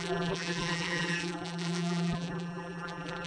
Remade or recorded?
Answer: remade